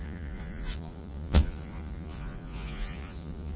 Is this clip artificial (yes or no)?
yes